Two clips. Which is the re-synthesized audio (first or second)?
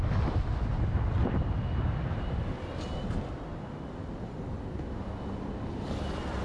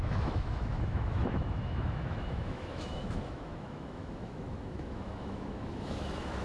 second